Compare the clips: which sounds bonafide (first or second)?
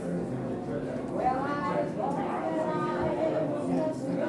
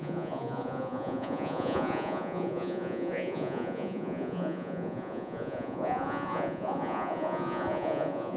first